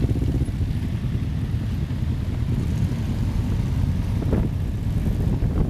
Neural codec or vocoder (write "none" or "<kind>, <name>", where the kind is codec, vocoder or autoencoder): none